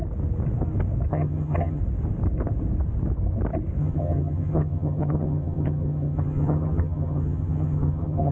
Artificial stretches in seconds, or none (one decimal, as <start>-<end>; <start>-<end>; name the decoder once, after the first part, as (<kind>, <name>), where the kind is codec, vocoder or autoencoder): 1.1-1.8 (vocoder, HiFi-GAN); 3.8-8.3